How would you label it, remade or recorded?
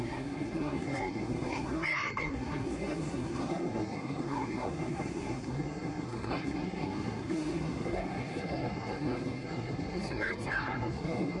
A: remade